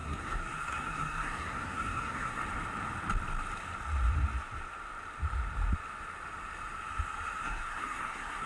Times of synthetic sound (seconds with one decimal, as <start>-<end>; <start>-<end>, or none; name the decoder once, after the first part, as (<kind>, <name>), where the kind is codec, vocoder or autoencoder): 0.0-2.4 (codec, SNAC); 7.4-8.5